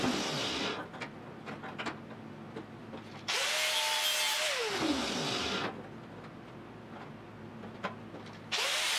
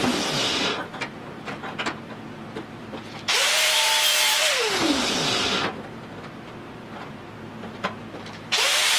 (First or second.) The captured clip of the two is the first